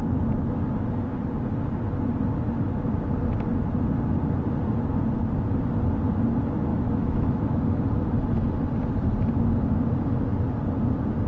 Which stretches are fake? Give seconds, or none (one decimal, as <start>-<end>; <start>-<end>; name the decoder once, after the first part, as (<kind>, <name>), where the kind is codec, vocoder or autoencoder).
6.7-7.8 (autoencoder, DAC-VAE)

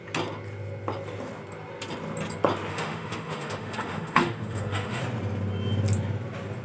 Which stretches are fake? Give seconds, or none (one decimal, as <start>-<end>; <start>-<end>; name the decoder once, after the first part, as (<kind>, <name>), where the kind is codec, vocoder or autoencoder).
2.7-5.0 (autoencoder, DAC-VAE)